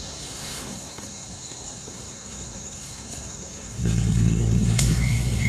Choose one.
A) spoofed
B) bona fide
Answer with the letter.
A